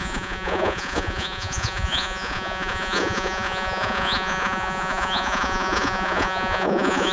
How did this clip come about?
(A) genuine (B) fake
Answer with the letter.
B